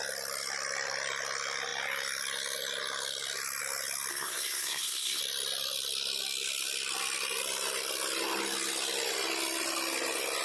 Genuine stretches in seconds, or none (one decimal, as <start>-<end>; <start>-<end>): 0.0-4.1; 5.2-10.4